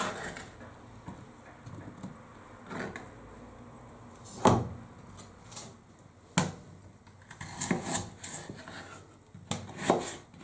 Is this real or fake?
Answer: real